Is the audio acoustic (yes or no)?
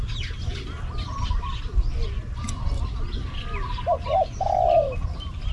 yes